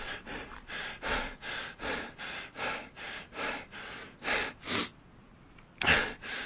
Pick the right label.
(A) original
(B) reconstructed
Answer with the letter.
A